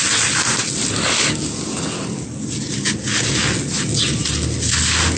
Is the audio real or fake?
real